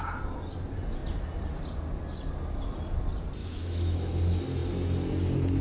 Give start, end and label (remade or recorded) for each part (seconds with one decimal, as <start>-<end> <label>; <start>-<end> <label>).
0.0-3.4 recorded; 3.4-4.1 remade; 4.1-5.6 recorded